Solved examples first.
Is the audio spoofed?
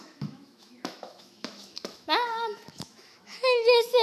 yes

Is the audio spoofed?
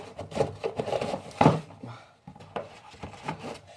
yes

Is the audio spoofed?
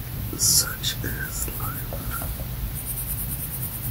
no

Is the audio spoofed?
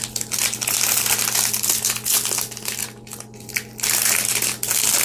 no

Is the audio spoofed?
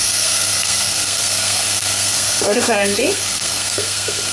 yes